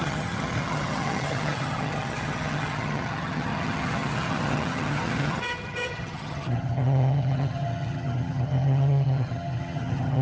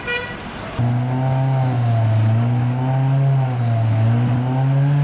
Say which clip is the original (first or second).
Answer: second